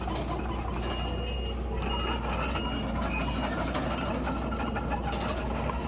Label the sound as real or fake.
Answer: real